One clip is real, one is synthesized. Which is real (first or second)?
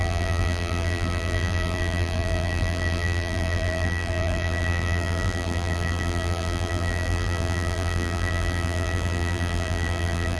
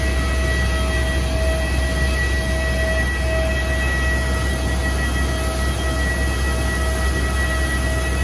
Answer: second